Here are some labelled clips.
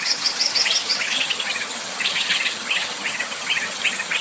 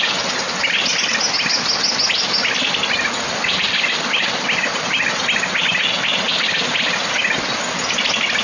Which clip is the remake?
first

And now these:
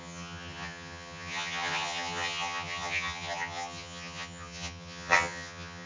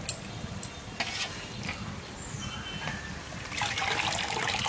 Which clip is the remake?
first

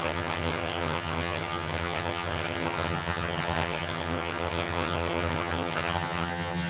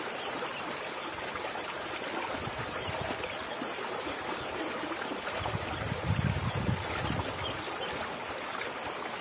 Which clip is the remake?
first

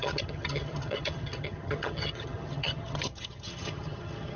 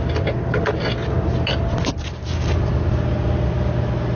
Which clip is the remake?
first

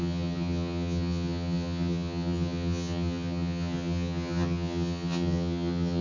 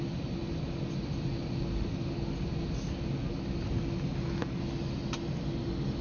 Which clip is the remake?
first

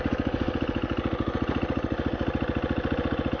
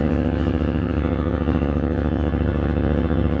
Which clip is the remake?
second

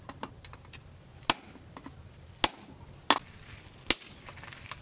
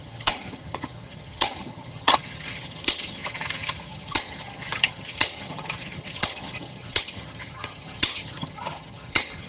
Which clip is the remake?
second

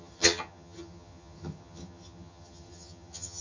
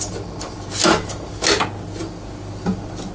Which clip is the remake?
first